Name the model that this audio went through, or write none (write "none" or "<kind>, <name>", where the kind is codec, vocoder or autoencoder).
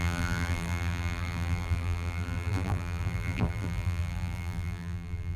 vocoder, BigVGAN v2